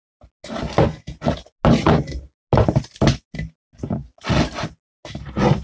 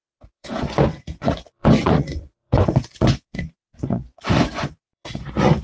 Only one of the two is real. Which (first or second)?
first